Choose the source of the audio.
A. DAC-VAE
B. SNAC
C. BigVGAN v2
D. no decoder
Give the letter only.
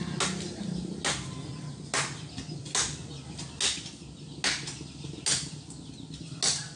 D